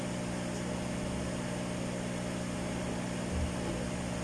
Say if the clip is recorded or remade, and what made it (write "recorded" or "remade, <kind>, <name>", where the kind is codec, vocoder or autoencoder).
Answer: recorded